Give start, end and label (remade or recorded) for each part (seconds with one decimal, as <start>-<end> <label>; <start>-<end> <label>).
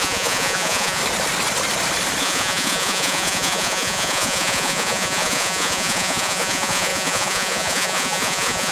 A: 0.0-1.0 remade; 1.0-2.2 recorded; 2.2-8.7 remade